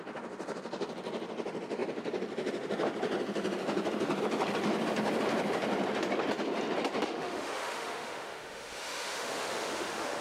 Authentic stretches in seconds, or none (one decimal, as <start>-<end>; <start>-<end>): 0.0-7.0